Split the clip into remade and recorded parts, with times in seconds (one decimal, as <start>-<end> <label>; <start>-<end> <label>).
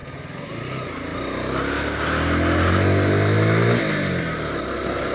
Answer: 0.0-5.1 recorded